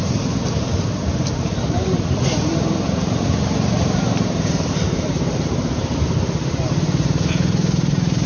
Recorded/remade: remade